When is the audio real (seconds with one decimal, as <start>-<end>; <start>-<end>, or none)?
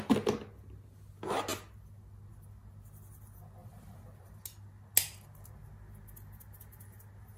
0.0-3.6; 4.4-7.4